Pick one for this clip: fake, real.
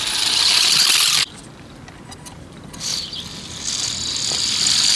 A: real